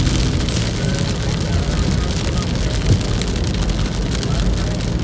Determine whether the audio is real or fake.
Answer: real